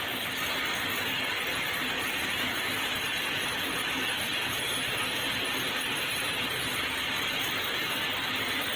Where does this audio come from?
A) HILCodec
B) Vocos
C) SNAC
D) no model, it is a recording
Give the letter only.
D